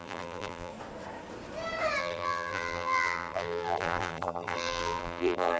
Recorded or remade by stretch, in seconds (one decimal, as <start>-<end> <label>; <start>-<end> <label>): 0.0-0.7 remade; 0.7-2.0 recorded; 2.0-5.6 remade